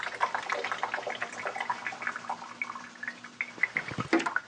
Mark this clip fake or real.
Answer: real